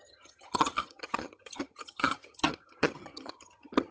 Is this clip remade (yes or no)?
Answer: yes